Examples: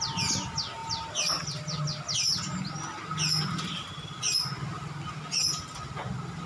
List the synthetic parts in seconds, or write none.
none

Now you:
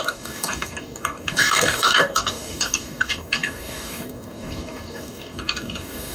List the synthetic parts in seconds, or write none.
0.0-6.1 (codec, DAC)

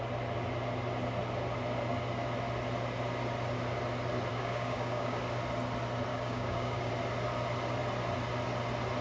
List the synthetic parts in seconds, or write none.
4.3-5.2 (codec, DAC); 6.1-6.9

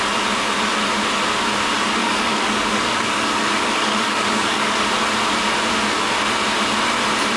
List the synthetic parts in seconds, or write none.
2.0-4.9 (codec, DAC)

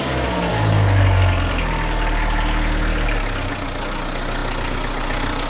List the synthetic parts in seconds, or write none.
0.5-1.5 (codec, DAC); 2.9-3.5